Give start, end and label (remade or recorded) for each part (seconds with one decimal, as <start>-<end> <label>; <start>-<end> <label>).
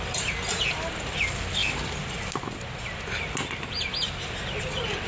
0.0-5.1 recorded